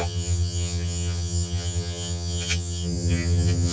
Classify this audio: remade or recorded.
remade